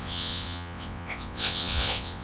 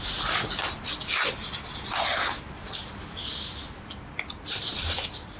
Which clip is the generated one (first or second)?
first